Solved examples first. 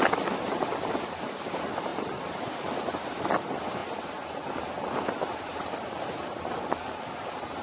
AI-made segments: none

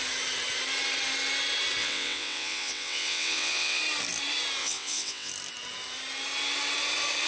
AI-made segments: 1.8-3.8 (vocoder, WaveNeXt); 4.6-5.3

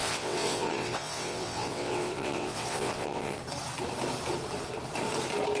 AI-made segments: 0.0-3.4 (vocoder, WaveNeXt)

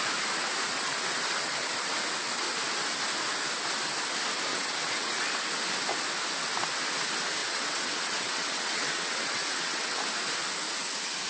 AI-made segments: 4.5-5.2 (vocoder, WaveNeXt); 7.4-10.0

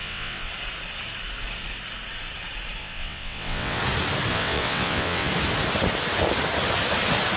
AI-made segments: 0.0-0.5 (vocoder, WaveNeXt); 2.8-3.8; 4.3-5.3

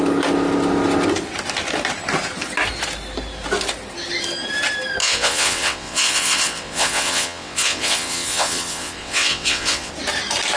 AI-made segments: 5.0-9.9 (vocoder, WaveNeXt)

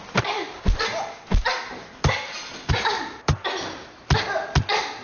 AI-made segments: none